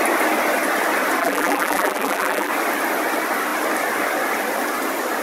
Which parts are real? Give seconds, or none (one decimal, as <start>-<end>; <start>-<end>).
0.0-1.2; 2.5-5.2